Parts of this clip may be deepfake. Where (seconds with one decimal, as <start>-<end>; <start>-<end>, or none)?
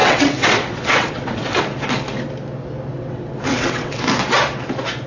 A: 0.0-1.6; 2.9-4.1